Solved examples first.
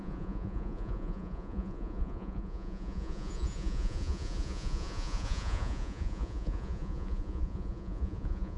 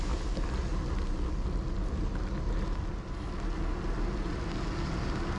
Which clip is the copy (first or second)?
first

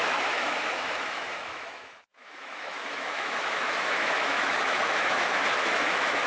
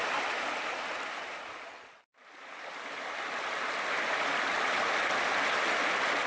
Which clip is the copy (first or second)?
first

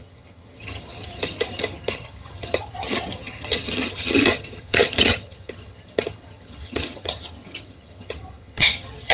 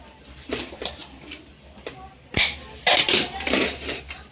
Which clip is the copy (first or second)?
first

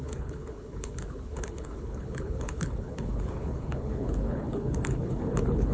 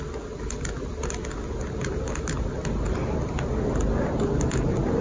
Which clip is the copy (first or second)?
first